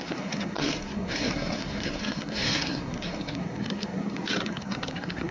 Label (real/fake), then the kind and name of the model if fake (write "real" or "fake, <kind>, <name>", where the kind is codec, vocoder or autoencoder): fake, codec, SNAC